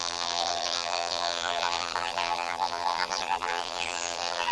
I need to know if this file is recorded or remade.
remade